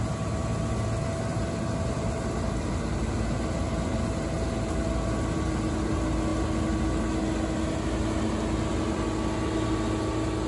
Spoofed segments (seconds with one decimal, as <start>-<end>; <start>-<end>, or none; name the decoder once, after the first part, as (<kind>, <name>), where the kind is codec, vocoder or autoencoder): none